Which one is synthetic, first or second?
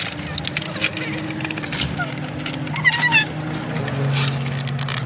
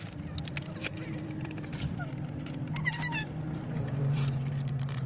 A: second